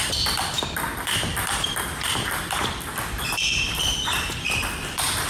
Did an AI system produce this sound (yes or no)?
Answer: yes